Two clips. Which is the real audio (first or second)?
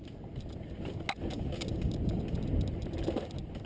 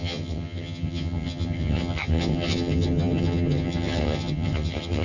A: first